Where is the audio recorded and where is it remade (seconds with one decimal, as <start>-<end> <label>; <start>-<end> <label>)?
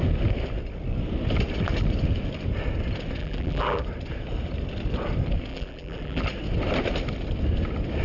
0.0-3.2 recorded; 3.2-3.8 remade; 3.8-5.5 recorded; 5.5-6.2 remade; 6.2-8.0 recorded